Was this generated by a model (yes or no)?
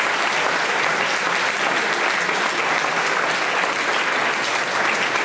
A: no